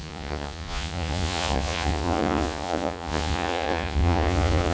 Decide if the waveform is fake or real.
fake